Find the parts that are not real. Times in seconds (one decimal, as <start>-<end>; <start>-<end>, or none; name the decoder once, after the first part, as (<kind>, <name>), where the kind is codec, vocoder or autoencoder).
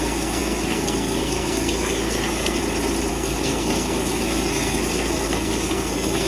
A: 0.0-2.6 (codec, SNAC); 3.1-6.3